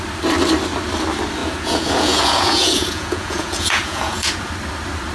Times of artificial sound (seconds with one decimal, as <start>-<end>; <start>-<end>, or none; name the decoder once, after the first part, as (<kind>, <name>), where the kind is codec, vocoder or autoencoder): 1.4-4.5 (vocoder, Vocos)